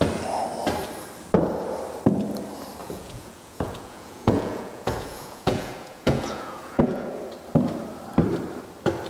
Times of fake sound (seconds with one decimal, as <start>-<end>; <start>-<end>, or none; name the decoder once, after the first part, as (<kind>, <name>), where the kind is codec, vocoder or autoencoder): 2.8-7.2 (vocoder, Vocos)